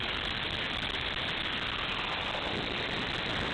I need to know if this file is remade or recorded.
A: recorded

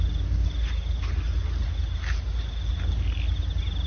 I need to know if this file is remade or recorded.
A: recorded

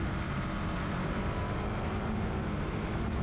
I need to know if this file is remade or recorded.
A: recorded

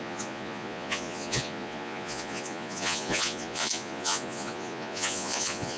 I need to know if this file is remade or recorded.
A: remade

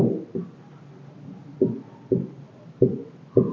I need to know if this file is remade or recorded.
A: remade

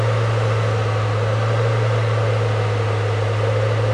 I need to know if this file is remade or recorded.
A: recorded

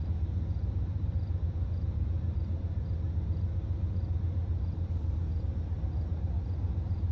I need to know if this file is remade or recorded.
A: recorded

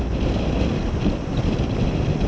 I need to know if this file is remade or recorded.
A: recorded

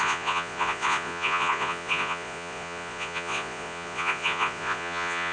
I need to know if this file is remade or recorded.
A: remade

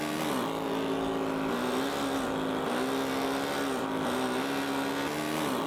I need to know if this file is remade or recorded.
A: recorded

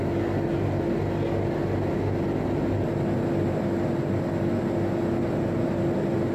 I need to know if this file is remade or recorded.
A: recorded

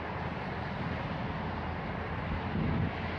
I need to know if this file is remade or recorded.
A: recorded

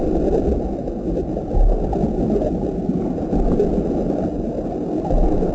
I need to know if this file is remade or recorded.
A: recorded